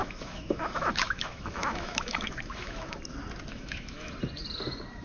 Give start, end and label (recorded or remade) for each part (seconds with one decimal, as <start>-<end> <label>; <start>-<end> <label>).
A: 0.0-3.0 remade; 3.0-3.5 recorded; 3.5-4.1 remade; 4.1-5.0 recorded